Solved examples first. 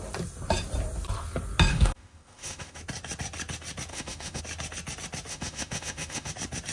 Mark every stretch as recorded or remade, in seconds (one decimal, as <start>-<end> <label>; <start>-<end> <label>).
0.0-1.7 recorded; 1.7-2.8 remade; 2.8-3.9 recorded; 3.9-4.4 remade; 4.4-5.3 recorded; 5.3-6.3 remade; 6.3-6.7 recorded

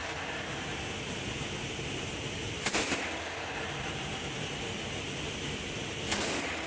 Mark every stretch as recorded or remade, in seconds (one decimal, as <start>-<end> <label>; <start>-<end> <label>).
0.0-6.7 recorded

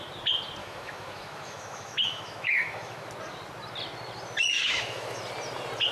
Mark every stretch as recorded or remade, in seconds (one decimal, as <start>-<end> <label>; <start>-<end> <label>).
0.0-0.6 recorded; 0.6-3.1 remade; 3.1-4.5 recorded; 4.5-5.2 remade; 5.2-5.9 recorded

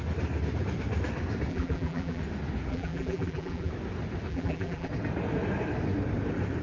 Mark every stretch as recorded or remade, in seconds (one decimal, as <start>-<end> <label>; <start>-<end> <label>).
0.0-1.5 recorded; 1.5-2.2 remade; 2.2-2.7 recorded; 2.7-3.7 remade; 3.7-4.3 recorded; 4.3-4.9 remade; 4.9-6.6 recorded

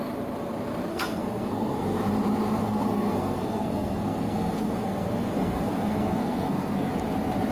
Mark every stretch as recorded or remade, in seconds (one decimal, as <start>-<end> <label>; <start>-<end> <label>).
0.0-0.9 recorded; 0.9-2.2 remade; 2.2-2.6 recorded; 2.6-6.9 remade; 6.9-7.5 recorded